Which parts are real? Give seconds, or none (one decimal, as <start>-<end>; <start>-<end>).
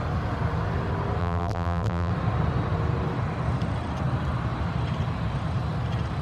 0.0-1.2; 2.1-6.2